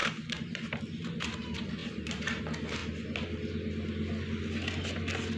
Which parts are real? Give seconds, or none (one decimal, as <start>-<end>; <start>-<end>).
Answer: 0.8-1.8; 2.4-5.4